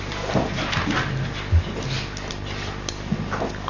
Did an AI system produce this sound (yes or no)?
no